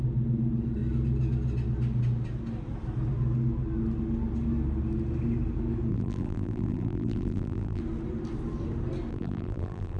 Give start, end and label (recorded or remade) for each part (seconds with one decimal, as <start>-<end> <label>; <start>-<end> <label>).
0.0-5.9 recorded; 5.9-7.8 remade; 7.8-9.1 recorded; 9.1-10.0 remade